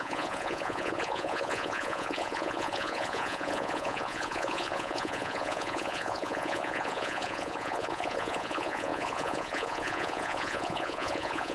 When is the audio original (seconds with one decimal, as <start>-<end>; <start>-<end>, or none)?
none